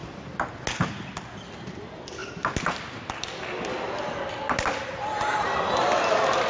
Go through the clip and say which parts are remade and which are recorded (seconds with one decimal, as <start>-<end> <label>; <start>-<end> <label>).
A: 0.0-6.5 recorded